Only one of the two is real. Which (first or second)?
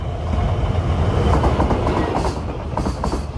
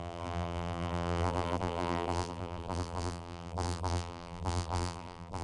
first